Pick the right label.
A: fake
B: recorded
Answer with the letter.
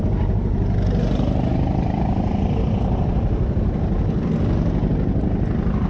B